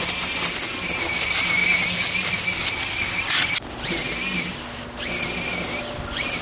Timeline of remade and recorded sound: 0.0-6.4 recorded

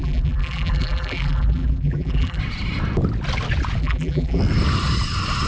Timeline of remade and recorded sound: 0.0-2.4 remade; 2.4-3.8 recorded; 3.8-4.4 remade; 4.4-5.5 recorded